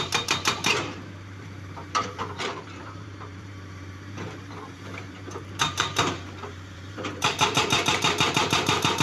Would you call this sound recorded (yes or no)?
no